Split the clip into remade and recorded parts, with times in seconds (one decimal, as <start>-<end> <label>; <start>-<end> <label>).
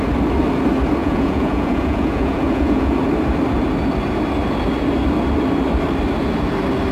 0.0-1.0 recorded; 1.0-3.0 remade; 3.0-6.9 recorded